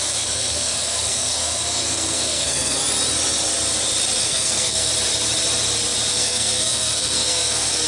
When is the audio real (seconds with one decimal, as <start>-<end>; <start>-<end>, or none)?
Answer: 2.8-4.2; 4.9-6.1